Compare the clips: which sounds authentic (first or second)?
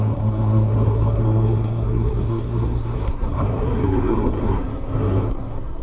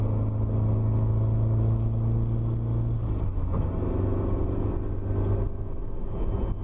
second